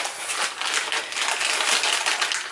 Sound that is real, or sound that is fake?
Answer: real